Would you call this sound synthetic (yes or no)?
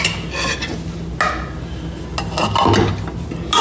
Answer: no